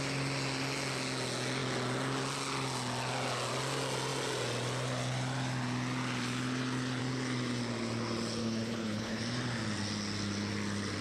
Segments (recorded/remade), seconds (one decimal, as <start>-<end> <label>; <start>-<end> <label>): 0.0-8.4 recorded; 8.4-9.2 remade; 9.2-11.0 recorded